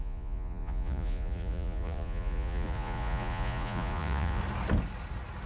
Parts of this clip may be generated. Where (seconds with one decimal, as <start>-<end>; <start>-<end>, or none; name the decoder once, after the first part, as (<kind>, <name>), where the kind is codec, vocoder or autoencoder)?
0.0-4.4 (vocoder, Vocos)